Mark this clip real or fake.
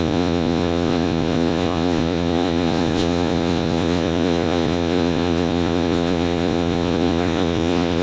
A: fake